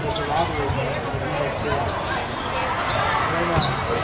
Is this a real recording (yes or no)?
yes